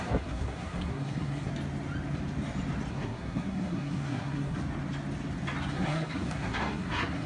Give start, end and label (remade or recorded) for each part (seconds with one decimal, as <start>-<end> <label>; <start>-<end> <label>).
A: 0.0-1.5 remade; 1.5-2.9 recorded; 2.9-4.6 remade; 4.6-5.7 recorded; 5.7-7.3 remade